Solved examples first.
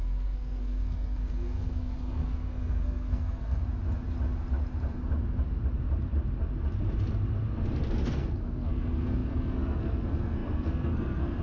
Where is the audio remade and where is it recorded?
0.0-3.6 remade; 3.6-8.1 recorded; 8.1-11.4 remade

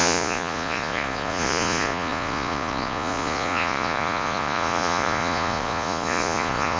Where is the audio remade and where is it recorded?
0.0-6.8 remade

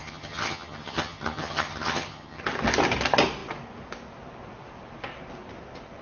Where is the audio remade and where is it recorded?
0.0-2.4 remade; 2.4-6.0 recorded